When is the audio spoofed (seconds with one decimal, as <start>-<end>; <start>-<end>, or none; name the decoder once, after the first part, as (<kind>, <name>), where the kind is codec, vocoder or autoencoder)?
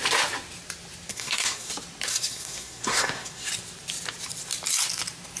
1.1-1.7 (codec, SNAC); 2.1-3.5